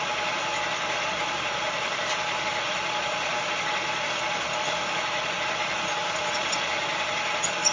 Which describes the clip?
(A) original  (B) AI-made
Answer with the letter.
A